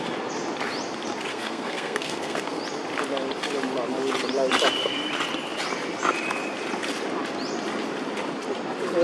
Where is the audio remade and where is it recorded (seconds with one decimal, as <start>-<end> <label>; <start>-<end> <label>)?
0.0-1.3 recorded; 1.3-2.6 remade; 2.6-9.0 recorded